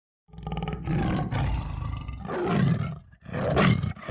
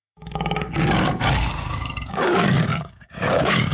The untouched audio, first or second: first